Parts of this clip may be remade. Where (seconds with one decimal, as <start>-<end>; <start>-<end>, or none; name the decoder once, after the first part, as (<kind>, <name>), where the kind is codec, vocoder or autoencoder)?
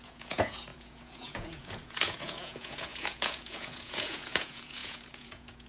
0.0-5.7 (vocoder, Vocos)